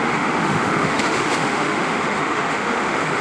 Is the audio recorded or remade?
remade